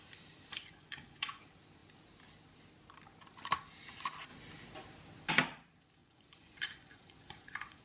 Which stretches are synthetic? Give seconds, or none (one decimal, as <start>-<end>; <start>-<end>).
0.5-1.4; 6.0-7.8